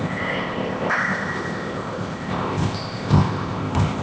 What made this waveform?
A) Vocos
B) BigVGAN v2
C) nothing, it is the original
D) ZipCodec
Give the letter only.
D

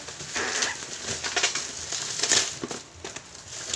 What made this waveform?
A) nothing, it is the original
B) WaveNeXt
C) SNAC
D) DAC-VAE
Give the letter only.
A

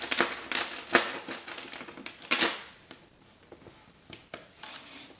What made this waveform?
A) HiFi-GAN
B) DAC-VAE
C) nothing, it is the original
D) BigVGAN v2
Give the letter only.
C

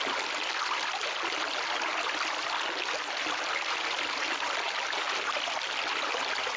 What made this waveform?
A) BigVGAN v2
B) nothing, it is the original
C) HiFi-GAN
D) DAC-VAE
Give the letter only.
B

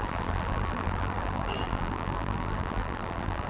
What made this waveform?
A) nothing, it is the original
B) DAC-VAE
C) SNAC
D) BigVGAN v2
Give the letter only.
D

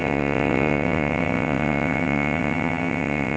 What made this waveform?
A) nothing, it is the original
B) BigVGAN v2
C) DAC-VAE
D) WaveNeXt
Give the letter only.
D